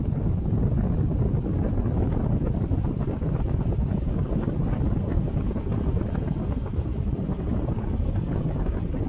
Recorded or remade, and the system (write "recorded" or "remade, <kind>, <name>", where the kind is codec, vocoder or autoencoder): recorded